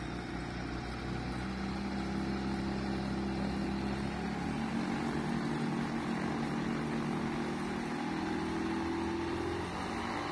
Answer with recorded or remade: recorded